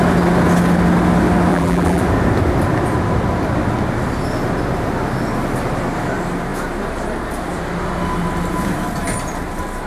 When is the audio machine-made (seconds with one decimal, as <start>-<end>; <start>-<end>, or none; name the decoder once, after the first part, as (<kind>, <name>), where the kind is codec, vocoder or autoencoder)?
1.5-2.0 (vocoder, BigVGAN v2)

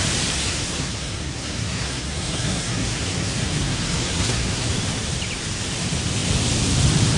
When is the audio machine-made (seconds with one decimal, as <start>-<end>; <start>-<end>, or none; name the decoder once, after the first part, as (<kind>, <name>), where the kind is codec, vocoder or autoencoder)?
0.4-4.7 (codec, SNAC)

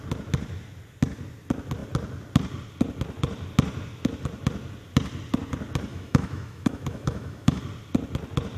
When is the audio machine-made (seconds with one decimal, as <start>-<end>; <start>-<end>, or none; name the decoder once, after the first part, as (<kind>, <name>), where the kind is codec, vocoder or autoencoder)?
5.9-7.6 (autoencoder, DAC-VAE)